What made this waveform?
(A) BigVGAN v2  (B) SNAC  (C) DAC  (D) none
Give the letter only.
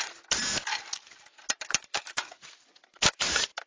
D